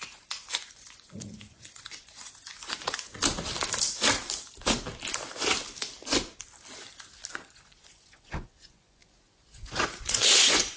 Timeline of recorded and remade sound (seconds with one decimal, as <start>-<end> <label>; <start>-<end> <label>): 0.0-3.1 remade; 3.1-7.3 recorded; 7.3-10.8 remade